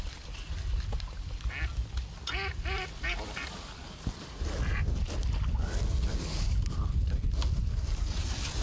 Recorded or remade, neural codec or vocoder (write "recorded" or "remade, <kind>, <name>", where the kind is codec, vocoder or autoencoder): recorded